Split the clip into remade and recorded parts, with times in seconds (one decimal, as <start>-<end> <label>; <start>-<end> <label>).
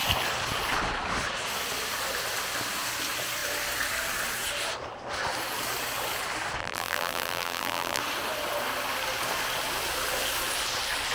0.0-6.6 recorded; 6.6-8.0 remade; 8.0-11.1 recorded